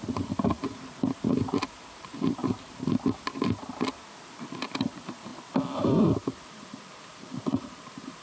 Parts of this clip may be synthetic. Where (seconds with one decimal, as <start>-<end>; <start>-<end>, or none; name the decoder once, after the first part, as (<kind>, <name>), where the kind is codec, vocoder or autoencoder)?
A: none